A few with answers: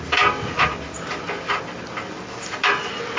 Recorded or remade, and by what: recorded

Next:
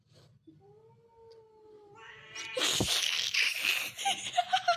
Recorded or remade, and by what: recorded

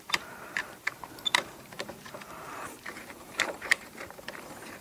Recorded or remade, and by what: remade, vocoder, BigVGAN v2